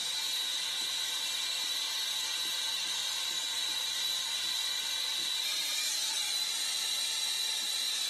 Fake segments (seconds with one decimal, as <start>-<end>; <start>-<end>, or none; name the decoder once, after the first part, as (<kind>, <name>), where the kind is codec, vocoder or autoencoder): 3.0-6.5 (vocoder, BigVGAN v2)

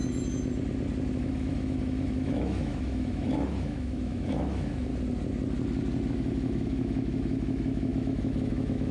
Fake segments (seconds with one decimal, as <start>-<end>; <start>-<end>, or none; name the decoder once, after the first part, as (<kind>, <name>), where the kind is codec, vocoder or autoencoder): 1.2-4.9 (autoencoder, DAC-VAE); 6.1-8.9

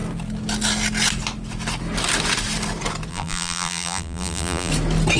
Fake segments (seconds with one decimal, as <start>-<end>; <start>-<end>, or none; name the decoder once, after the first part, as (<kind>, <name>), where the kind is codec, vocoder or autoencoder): 3.1-4.7 (vocoder, BigVGAN v2)

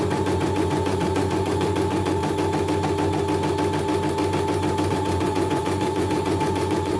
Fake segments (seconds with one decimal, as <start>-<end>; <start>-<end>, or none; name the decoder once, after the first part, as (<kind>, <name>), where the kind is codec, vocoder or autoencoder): 0.0-2.2 (vocoder, Vocos); 4.9-7.0